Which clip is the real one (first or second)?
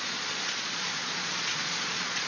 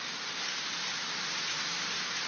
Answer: second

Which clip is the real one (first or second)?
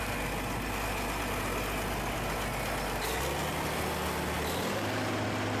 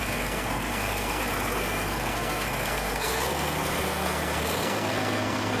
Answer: first